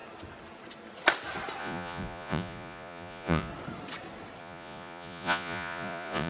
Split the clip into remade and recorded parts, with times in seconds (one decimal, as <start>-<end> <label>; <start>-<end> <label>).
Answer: 0.0-1.6 recorded; 1.6-3.5 remade; 3.5-4.4 recorded; 4.4-6.3 remade